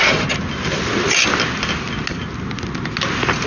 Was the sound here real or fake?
real